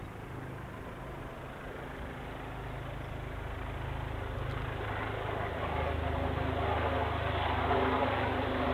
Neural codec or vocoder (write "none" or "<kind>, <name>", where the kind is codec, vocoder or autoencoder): none